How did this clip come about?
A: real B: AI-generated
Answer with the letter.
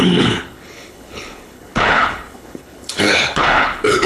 B